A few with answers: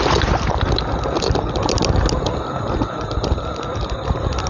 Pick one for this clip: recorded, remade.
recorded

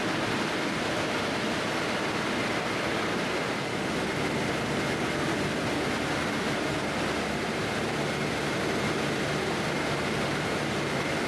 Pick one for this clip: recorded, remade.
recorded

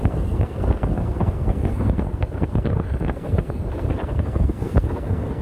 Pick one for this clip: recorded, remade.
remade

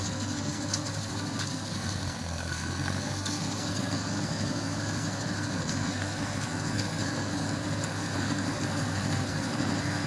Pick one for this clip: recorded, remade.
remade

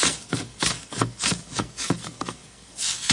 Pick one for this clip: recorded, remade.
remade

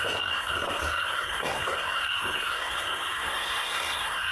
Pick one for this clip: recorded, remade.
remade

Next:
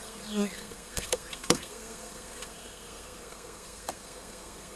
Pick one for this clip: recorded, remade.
remade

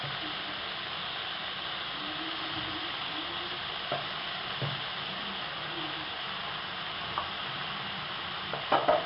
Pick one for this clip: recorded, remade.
recorded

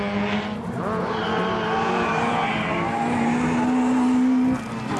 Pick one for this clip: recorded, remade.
recorded